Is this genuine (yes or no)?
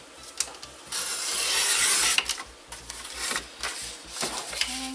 yes